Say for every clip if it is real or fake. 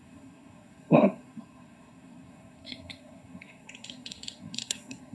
fake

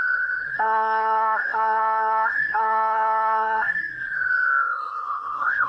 fake